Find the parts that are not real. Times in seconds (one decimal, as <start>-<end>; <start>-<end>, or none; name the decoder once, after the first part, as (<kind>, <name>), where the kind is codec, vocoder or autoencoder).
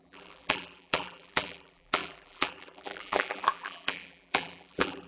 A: 0.0-5.1 (vocoder, BigVGAN v2)